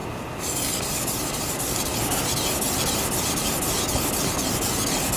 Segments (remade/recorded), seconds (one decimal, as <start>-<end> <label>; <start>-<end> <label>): 0.0-0.9 recorded; 0.9-1.9 remade; 1.9-5.2 recorded